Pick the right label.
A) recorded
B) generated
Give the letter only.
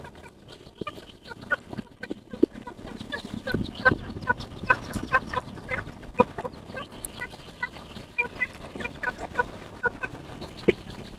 A